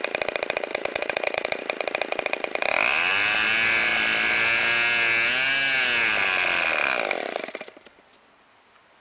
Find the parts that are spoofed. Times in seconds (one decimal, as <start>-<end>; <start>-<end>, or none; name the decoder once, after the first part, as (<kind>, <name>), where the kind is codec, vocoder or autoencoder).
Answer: 0.7-1.6 (vocoder, Vocos)